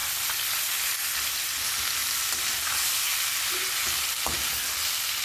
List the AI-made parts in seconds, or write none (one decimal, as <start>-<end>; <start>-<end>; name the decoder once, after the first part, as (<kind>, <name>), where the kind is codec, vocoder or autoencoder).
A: none